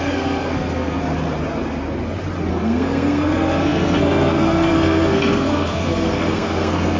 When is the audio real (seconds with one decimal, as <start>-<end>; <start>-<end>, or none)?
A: 1.0-2.5